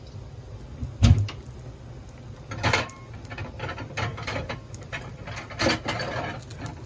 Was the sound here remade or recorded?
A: recorded